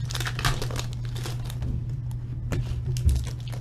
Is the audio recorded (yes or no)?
yes